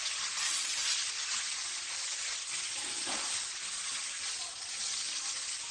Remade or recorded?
remade